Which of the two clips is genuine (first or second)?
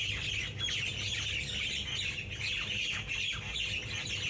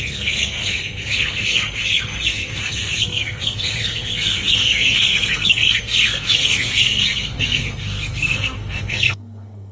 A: first